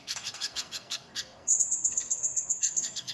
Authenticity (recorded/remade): remade